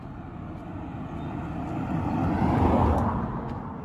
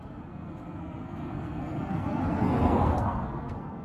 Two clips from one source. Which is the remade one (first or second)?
second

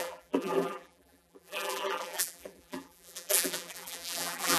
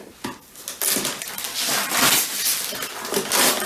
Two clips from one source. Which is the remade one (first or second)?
first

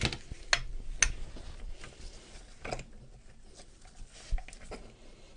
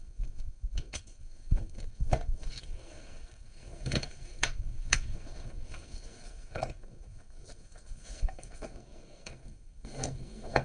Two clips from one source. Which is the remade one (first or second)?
second